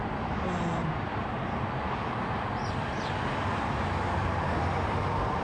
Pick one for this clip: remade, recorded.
remade